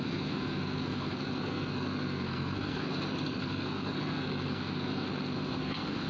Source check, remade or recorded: remade